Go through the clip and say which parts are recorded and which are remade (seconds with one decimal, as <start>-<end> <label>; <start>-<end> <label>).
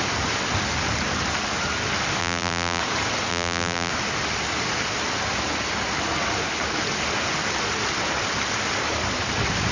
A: 0.0-2.2 recorded; 2.2-2.8 remade; 2.8-3.3 recorded; 3.3-3.9 remade; 3.9-9.7 recorded